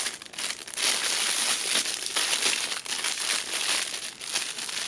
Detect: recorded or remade recorded